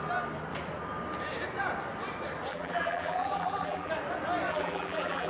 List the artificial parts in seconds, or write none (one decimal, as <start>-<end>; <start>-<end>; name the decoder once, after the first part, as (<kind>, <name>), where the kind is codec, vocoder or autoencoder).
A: 2.5-3.9 (vocoder, BigVGAN v2); 4.5-5.3